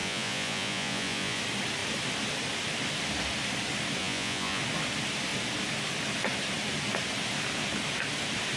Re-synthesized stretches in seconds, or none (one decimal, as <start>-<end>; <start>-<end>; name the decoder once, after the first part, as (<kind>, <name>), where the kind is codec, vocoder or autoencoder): 0.0-1.4 (vocoder, Vocos); 4.0-4.6

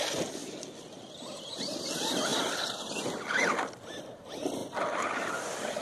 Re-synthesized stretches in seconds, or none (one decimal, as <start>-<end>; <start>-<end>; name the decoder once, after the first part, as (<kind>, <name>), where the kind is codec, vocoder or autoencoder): 0.4-1.2 (vocoder, BigVGAN v2)

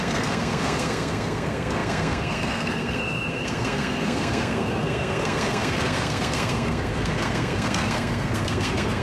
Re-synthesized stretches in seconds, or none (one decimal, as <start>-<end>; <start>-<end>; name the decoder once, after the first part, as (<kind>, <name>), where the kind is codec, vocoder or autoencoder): 0.0-9.0 (codec, SNAC)